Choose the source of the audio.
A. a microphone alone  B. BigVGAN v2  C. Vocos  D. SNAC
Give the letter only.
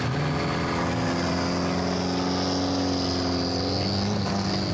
A